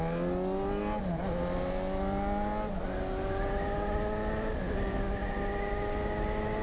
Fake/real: real